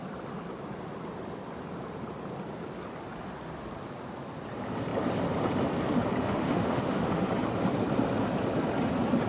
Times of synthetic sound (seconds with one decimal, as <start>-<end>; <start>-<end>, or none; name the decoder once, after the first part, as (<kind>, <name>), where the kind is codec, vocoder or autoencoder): 6.2-7.3 (autoencoder, DAC-VAE)